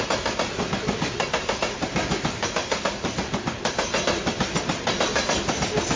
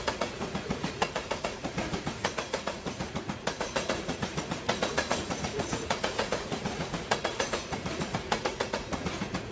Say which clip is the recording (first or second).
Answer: first